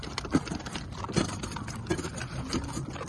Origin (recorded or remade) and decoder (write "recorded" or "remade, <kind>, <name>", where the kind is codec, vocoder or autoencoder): recorded